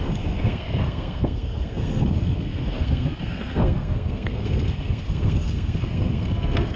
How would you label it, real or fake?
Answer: fake